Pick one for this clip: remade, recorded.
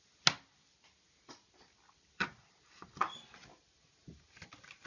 recorded